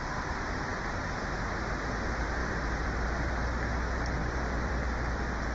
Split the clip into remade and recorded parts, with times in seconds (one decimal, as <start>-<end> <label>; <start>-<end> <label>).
0.0-0.7 recorded; 0.7-1.7 remade; 1.7-2.4 recorded; 2.4-2.9 remade; 2.9-4.2 recorded; 4.2-4.8 remade; 4.8-5.5 recorded